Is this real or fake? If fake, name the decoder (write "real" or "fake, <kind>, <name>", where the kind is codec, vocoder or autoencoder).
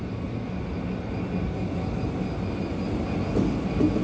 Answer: real